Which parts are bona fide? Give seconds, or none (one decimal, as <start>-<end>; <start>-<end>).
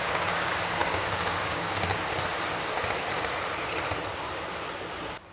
1.9-5.3